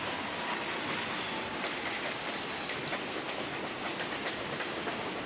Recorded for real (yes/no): no